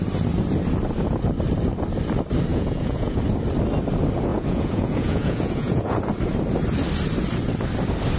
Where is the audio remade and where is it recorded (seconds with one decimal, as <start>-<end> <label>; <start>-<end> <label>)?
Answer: 0.0-2.5 recorded; 2.5-3.2 remade; 3.2-4.3 recorded; 4.3-6.0 remade; 6.0-8.2 recorded